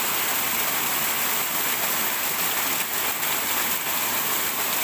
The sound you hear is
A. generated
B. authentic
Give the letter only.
B